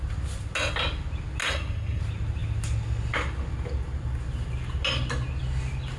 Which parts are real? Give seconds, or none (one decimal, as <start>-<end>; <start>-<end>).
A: 0.0-1.4; 2.0-6.0